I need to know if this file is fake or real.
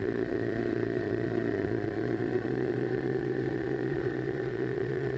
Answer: fake